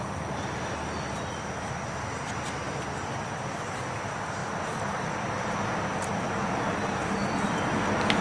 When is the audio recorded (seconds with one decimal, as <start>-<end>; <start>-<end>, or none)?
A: 0.0-8.2